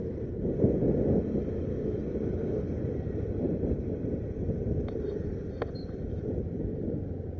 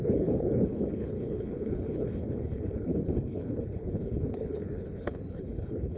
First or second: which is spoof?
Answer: second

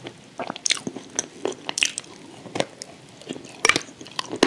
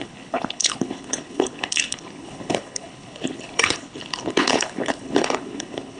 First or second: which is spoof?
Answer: second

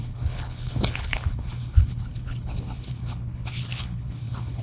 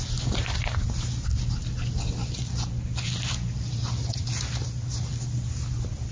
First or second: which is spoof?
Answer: first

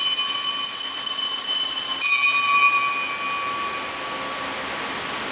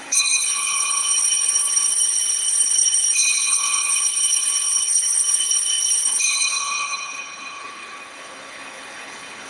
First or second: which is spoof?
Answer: second